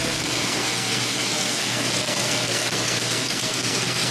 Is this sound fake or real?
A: fake